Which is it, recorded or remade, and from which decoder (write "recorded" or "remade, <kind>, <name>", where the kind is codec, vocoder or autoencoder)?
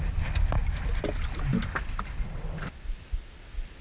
recorded